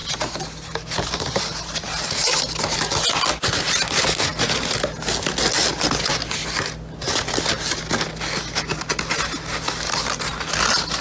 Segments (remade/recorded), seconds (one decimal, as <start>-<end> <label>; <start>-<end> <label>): 0.0-11.0 recorded